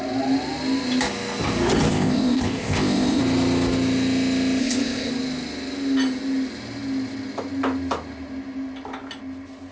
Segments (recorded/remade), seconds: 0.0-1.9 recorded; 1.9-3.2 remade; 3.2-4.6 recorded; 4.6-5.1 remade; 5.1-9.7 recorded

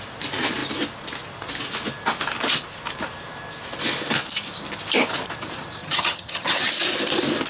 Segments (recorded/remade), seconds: 0.0-5.8 recorded; 5.8-6.7 remade; 6.7-7.5 recorded